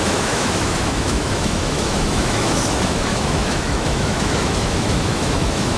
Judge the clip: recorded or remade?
remade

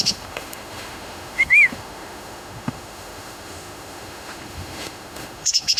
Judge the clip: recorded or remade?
remade